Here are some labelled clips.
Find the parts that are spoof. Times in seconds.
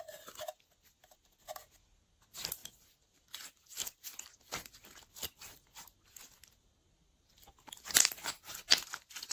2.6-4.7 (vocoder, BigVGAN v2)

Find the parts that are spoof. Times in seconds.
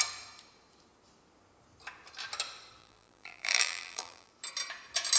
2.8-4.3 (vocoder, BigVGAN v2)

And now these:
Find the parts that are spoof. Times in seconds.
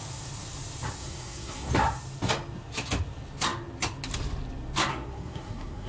1.0-1.7 (codec, SNAC); 4.9-5.9